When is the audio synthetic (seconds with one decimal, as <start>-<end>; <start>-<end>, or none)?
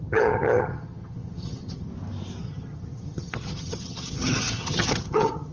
0.0-1.9; 2.4-5.5